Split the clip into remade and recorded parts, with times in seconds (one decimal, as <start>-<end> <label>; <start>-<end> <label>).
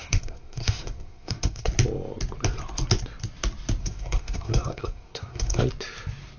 0.0-1.7 remade; 1.7-3.8 recorded; 3.8-5.6 remade; 5.6-6.4 recorded